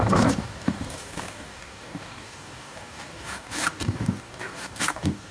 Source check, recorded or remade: remade